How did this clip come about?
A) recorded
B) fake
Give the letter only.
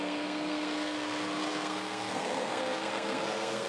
B